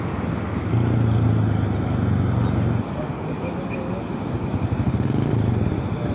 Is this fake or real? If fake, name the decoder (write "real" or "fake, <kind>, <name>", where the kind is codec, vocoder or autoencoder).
real